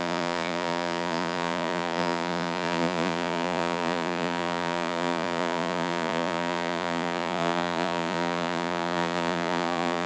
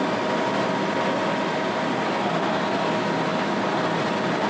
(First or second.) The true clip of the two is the second